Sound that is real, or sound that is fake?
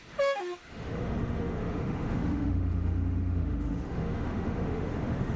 fake